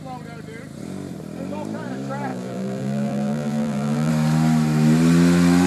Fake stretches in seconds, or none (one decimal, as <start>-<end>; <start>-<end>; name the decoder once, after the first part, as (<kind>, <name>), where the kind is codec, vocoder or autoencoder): 2.3-4.1 (vocoder, BigVGAN v2)